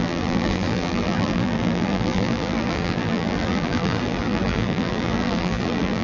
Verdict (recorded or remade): remade